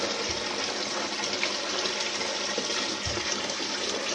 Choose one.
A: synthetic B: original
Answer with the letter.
B